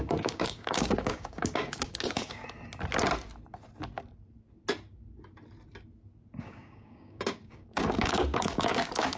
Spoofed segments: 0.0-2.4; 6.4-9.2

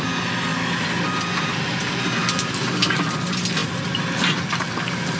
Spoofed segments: none

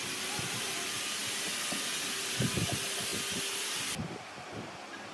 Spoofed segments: none

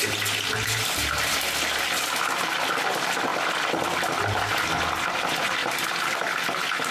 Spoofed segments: none

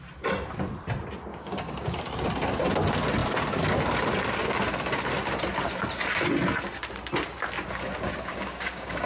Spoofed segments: 1.3-2.0; 8.3-9.1

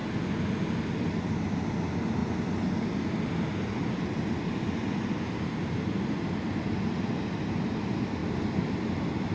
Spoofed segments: none

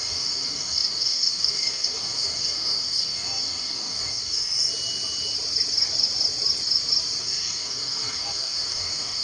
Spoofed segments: 0.0-4.7; 7.2-9.2

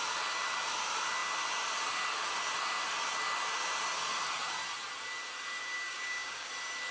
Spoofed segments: 5.6-6.5